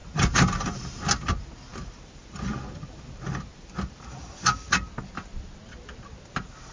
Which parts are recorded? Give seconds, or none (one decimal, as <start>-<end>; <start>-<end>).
0.9-1.7; 4.9-6.7